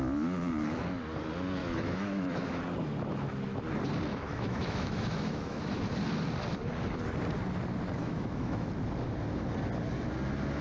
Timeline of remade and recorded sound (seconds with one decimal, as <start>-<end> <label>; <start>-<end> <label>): 0.0-1.6 recorded; 1.6-2.6 remade; 2.6-4.1 recorded; 4.1-5.8 remade; 5.8-8.0 recorded; 8.0-8.7 remade; 8.7-10.6 recorded